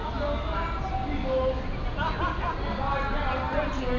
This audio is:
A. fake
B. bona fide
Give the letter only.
B